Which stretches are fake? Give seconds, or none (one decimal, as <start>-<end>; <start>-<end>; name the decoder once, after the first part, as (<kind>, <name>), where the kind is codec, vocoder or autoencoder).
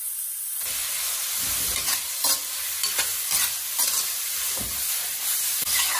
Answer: none